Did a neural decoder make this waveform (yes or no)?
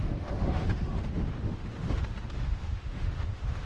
yes